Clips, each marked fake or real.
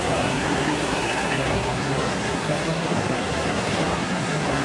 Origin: fake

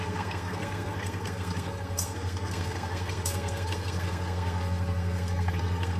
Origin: fake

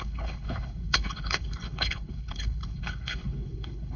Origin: fake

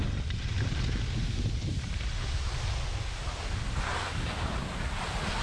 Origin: real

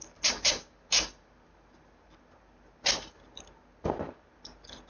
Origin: real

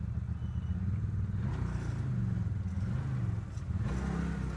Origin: real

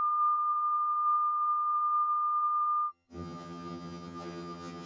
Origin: fake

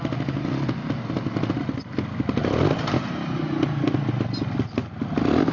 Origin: real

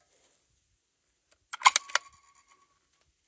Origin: real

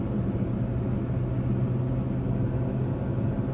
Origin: real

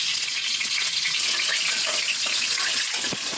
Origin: fake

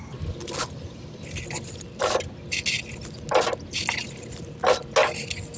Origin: real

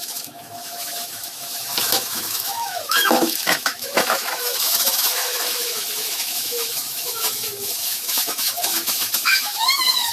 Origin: fake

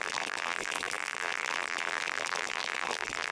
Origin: fake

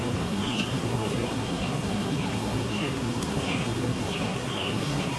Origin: fake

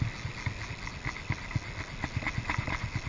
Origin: real